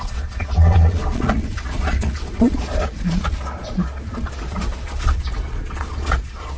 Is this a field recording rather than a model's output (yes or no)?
no